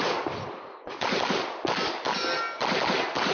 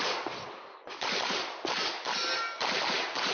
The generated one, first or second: second